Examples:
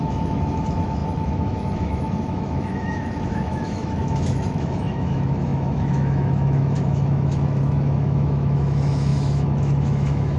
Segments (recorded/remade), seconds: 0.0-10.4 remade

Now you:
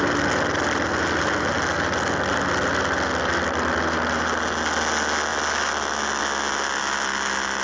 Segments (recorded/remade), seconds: 0.0-7.6 recorded

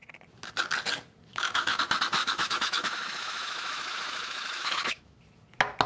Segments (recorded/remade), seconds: 0.0-1.3 recorded; 1.3-1.8 remade; 1.8-2.2 recorded; 2.2-5.2 remade; 5.2-5.9 recorded

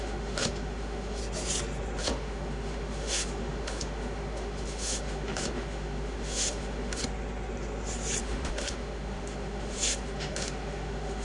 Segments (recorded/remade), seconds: 0.0-1.2 remade; 1.2-2.0 recorded; 2.0-7.0 remade; 7.0-8.2 recorded; 8.2-11.2 remade